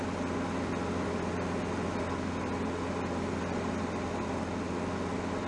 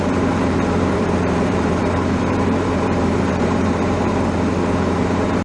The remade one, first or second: second